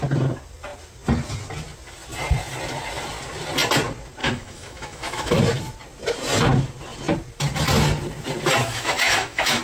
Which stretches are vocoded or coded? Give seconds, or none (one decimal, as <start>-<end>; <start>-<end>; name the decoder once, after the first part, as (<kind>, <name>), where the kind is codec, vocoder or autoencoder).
4.2-5.4 (autoencoder, DAC-VAE); 8.6-9.6